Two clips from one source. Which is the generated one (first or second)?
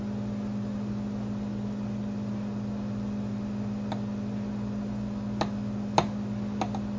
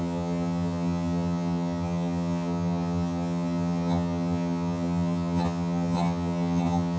second